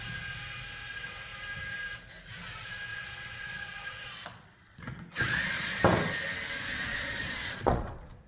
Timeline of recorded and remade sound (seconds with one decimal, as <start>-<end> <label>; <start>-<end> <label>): 0.0-2.9 recorded; 2.9-5.8 remade; 5.8-6.9 recorded; 6.9-8.3 remade